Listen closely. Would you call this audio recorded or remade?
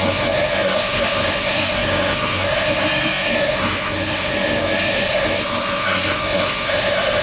remade